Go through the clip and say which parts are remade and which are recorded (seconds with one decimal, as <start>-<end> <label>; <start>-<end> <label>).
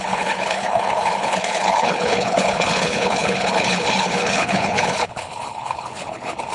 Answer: 0.0-6.5 remade